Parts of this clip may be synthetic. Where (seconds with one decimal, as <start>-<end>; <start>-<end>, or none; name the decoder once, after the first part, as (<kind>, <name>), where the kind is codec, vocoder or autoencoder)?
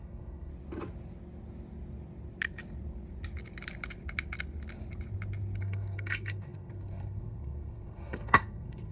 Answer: 0.0-0.5 (codec, SNAC); 5.6-8.9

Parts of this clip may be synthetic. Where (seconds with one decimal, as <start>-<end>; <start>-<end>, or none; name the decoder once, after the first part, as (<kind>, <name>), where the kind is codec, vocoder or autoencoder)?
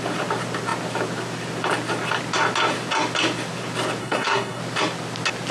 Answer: 4.0-4.6 (codec, SNAC)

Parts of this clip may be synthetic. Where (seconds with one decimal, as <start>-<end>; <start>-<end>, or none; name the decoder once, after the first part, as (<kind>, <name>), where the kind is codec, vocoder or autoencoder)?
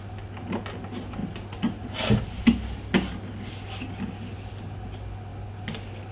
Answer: none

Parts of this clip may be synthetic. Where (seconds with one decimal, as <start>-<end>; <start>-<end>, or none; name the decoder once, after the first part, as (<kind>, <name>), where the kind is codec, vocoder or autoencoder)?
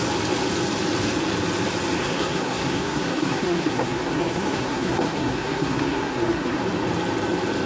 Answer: 2.0-6.6 (codec, SNAC)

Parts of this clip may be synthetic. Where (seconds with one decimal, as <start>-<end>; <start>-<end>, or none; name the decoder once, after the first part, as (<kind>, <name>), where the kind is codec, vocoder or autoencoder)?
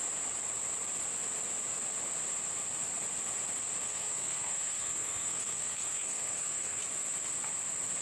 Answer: 3.8-6.8 (codec, SNAC)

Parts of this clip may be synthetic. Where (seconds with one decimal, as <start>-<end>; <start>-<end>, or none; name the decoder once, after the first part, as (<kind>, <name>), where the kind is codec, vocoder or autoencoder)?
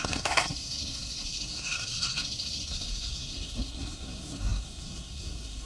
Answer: 0.0-5.7 (codec, SNAC)